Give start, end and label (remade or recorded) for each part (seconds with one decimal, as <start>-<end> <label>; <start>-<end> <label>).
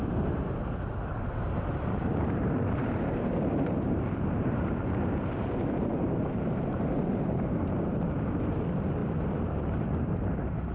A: 0.0-10.7 remade